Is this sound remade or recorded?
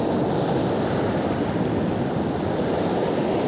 recorded